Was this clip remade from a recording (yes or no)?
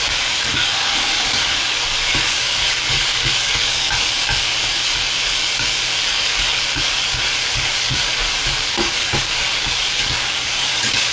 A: yes